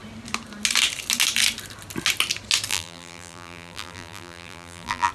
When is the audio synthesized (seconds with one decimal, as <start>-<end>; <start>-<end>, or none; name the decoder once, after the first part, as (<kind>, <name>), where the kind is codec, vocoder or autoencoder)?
2.7-5.1 (vocoder, BigVGAN v2)